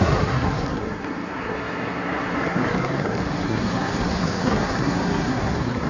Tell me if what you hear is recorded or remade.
remade